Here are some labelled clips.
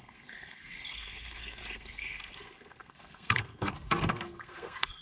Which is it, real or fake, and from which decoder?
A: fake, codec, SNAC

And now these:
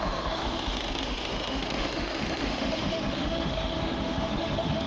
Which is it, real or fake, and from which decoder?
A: fake, autoencoder, DAC-VAE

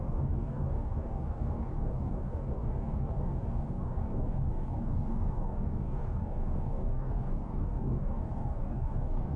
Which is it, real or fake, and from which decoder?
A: fake, codec, DAC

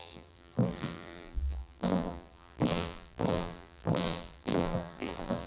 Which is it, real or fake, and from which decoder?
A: fake, vocoder, BigVGAN v2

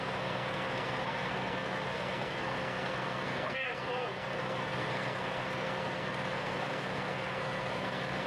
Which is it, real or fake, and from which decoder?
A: fake, codec, SNAC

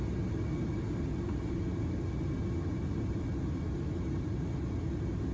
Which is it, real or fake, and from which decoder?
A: real